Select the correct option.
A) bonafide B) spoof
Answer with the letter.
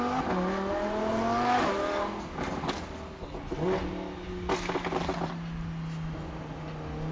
A